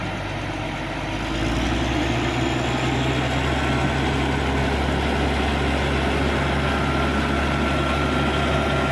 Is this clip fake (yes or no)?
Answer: no